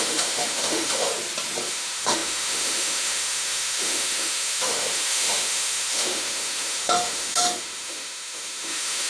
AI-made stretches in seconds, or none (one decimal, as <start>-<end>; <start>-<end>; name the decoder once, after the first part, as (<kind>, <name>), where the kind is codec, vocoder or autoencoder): 0.0-1.1 (autoencoder, DAC-VAE); 1.7-9.1